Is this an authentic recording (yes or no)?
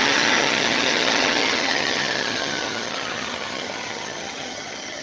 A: no